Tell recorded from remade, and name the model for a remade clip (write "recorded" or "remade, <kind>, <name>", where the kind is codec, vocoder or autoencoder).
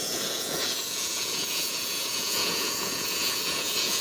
remade, vocoder, Vocos